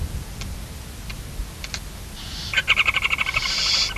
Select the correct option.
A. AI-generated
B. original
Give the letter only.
B